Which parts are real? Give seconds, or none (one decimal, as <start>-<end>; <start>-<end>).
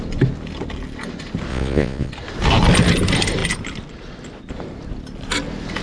0.0-1.5; 2.1-5.8